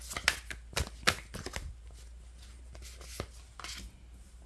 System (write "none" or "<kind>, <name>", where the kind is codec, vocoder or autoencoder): none